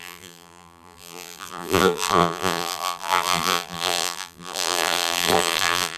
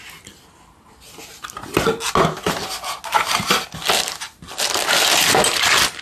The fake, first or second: first